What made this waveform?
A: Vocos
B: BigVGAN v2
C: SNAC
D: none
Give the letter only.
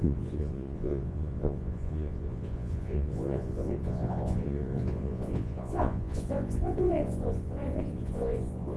A